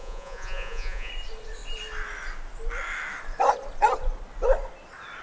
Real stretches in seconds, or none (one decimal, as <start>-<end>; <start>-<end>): 1.1-5.2